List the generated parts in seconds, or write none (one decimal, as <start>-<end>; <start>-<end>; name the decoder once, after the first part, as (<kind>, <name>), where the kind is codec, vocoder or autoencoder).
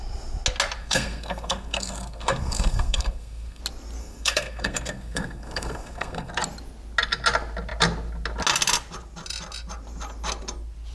0.8-3.6 (codec, SNAC); 4.0-6.3